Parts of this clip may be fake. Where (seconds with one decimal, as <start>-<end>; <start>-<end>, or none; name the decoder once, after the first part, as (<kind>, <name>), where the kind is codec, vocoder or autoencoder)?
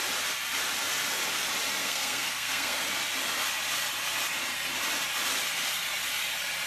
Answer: 1.8-2.8 (codec, SNAC)